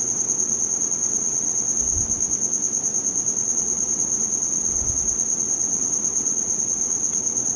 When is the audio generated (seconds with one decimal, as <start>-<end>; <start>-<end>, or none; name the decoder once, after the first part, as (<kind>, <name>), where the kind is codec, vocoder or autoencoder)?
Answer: 0.0-2.0 (vocoder, WaveNeXt); 3.4-7.6